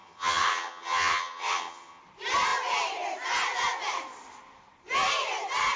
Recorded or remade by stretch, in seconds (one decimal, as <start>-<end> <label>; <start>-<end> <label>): 0.0-2.0 remade; 2.0-5.8 recorded